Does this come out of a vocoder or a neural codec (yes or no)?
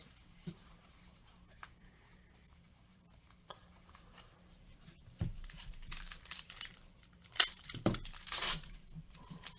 yes